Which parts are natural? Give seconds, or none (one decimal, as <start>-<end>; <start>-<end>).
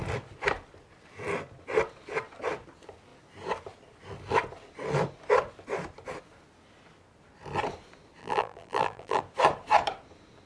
0.0-8.2; 9.2-10.5